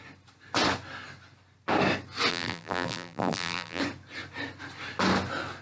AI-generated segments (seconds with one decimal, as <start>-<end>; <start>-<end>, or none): 2.3-3.8